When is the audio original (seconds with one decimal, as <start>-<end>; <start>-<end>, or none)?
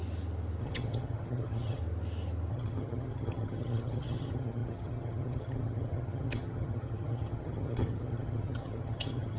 0.0-0.6; 1.8-2.5